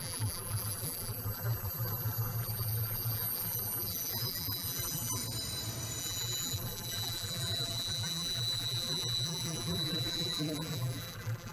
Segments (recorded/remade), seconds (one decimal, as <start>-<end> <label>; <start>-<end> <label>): 0.0-5.2 remade; 5.2-6.0 recorded; 6.0-11.5 remade